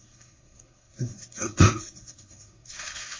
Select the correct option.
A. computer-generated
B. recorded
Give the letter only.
A